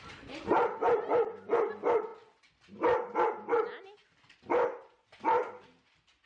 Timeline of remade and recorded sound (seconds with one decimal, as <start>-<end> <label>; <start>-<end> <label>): 0.0-6.3 recorded